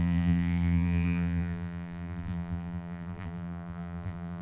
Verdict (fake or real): fake